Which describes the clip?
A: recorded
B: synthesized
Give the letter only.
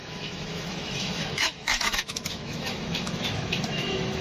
B